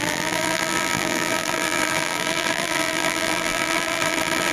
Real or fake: fake